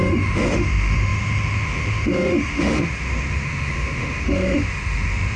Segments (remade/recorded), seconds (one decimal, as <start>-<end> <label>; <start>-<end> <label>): 0.0-5.4 remade